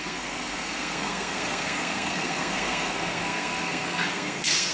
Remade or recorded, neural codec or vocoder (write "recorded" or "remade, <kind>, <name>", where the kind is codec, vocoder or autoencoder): remade, codec, SNAC